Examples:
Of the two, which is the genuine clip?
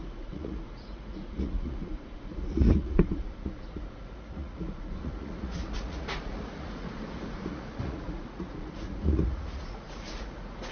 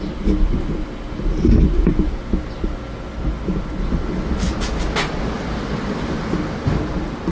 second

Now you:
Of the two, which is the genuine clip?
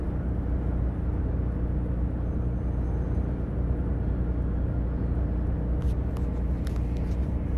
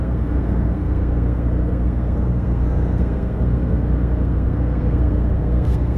first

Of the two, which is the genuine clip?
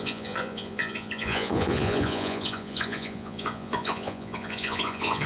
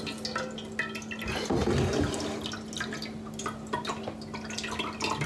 second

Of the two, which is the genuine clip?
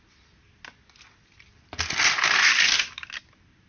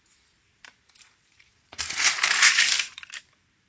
first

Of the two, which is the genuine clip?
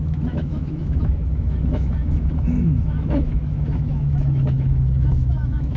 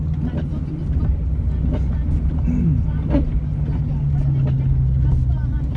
second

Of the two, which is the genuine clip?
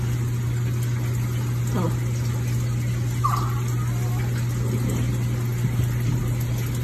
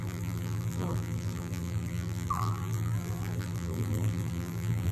first